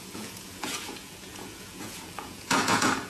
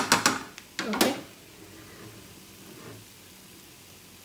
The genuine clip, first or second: second